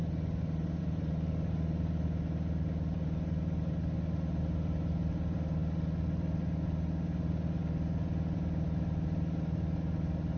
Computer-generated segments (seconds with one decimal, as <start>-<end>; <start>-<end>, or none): none